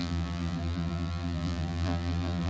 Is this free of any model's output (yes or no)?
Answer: no